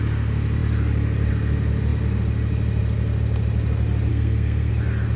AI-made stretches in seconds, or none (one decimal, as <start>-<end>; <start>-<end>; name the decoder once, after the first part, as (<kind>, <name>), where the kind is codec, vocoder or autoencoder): 4.1-4.7 (codec, SNAC)